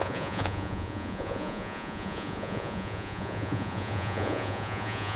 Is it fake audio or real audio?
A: fake